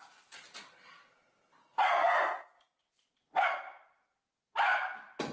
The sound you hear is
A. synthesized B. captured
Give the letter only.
B